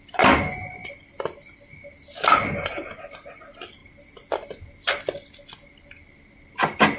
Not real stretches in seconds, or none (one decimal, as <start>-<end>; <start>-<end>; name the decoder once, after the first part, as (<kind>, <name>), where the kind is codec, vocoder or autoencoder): 0.8-3.3 (vocoder, BigVGAN v2); 3.8-6.5